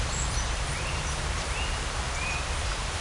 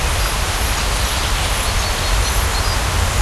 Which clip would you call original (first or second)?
second